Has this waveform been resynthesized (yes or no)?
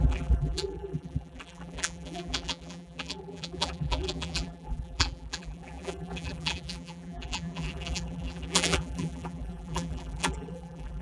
yes